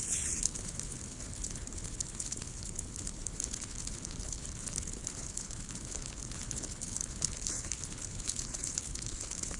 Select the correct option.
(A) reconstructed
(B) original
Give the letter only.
A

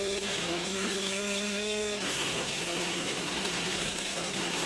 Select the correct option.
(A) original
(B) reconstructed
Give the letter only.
B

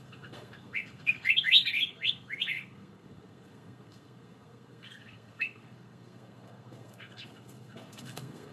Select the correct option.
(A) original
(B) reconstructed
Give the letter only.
B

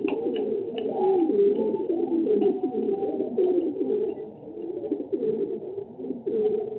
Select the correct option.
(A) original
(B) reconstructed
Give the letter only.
A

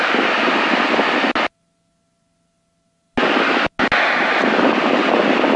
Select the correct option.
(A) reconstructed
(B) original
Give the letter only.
B